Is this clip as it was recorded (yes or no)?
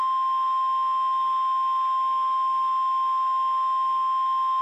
yes